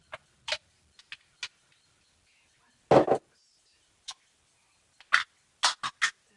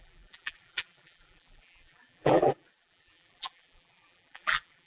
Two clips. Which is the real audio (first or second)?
first